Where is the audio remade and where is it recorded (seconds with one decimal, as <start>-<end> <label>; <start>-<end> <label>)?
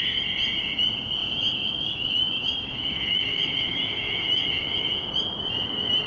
0.0-1.2 recorded; 1.2-4.9 remade; 4.9-6.1 recorded